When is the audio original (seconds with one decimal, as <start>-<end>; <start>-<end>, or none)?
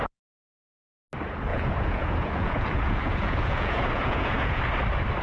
0.0-1.5; 4.6-5.2